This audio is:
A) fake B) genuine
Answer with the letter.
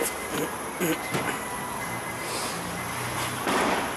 B